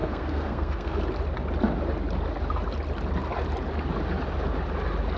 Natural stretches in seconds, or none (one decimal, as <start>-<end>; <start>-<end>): 1.0-5.2